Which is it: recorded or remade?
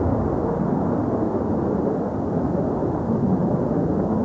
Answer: recorded